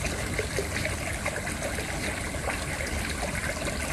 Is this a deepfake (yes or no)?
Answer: no